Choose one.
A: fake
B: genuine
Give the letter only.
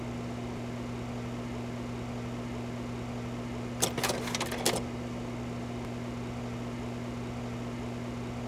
B